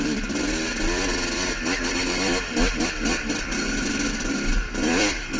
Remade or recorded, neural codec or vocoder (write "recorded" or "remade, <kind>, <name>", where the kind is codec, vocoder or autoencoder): remade, vocoder, BigVGAN v2